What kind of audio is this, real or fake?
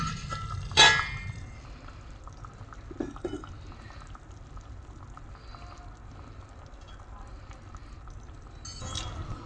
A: real